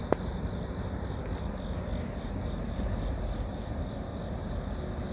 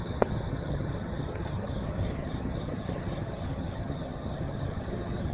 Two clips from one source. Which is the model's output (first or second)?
second